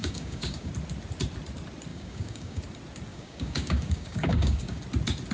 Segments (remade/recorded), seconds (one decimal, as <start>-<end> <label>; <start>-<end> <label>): 0.0-0.7 remade; 0.7-1.9 recorded; 1.9-2.6 remade; 2.6-3.1 recorded; 3.1-4.8 remade; 4.8-5.3 recorded